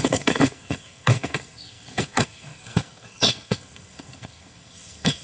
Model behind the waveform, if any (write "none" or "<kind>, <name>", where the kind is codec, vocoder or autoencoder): codec, SNAC